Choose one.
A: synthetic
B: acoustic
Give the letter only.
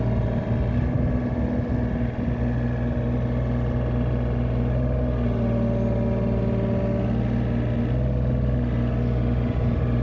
B